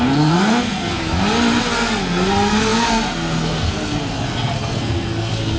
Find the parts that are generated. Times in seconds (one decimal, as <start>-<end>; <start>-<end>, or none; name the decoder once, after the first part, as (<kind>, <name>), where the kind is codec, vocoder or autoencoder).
0.0-1.0 (codec, SNAC); 1.6-5.6

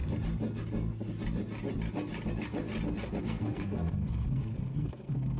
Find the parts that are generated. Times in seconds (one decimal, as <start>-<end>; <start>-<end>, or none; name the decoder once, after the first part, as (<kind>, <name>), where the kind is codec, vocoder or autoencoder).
3.2-5.4 (codec, SNAC)

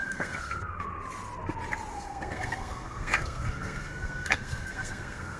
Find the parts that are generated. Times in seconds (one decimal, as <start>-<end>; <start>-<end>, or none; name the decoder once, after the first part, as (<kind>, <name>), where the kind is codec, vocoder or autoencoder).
0.0-0.9 (codec, SNAC); 1.9-5.4

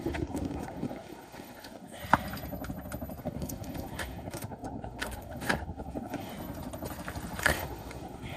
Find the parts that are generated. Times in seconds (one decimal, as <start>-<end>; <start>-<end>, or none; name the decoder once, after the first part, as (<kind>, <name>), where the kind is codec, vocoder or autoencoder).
0.0-2.0 (codec, SNAC); 3.2-6.3; 7.4-8.4

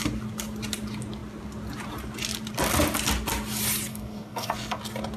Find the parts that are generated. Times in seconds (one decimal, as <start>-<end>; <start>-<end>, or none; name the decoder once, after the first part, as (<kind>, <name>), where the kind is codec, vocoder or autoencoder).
3.9-4.8 (codec, SNAC)

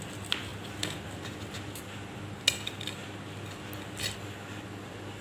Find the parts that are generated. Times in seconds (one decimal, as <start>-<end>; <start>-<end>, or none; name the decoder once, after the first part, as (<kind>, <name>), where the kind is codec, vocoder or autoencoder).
none

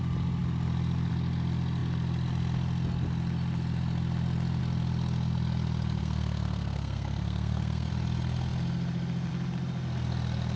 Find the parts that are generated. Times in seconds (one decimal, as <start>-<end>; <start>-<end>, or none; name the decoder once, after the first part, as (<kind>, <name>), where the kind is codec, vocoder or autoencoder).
6.0-7.9 (codec, SNAC)